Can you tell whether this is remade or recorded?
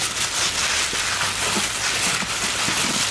recorded